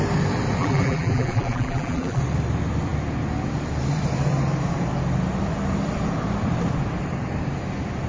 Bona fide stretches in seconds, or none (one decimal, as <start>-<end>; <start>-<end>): 0.0-0.6; 2.2-8.1